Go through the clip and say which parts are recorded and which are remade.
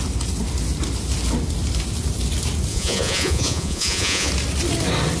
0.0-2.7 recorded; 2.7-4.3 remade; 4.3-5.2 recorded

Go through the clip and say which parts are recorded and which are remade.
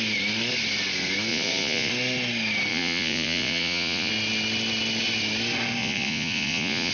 0.0-1.3 recorded; 1.3-1.9 remade; 1.9-2.7 recorded; 2.7-4.1 remade; 4.1-5.8 recorded; 5.8-6.9 remade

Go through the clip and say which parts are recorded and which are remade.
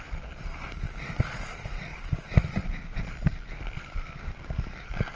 0.0-5.2 recorded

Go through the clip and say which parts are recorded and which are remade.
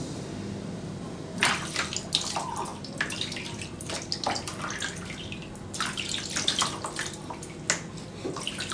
0.0-8.7 recorded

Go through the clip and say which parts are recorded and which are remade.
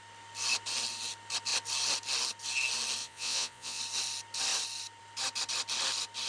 0.0-3.0 recorded; 3.0-3.8 remade; 3.8-6.3 recorded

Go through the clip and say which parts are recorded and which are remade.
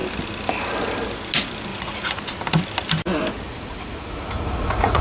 0.0-1.7 recorded; 1.7-2.2 remade; 2.2-3.5 recorded; 3.5-5.0 remade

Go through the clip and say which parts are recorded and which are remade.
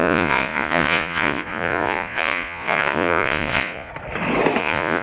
0.0-3.9 remade; 3.9-4.6 recorded; 4.6-5.0 remade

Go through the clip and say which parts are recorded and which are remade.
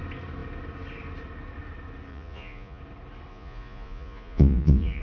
0.0-2.1 recorded; 2.1-2.8 remade; 2.8-3.3 recorded; 3.3-5.0 remade